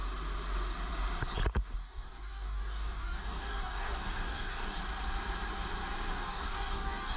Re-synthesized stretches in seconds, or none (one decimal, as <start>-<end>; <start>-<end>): 1.8-4.8; 6.1-7.2